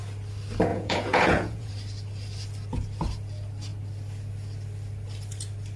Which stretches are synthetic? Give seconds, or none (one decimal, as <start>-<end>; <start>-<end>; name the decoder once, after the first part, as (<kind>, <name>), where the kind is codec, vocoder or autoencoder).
0.7-1.7 (vocoder, Vocos)